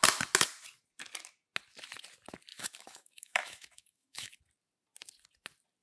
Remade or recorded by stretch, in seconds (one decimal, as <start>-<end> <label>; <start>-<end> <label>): 0.0-2.5 recorded; 2.5-4.3 remade; 4.3-5.8 recorded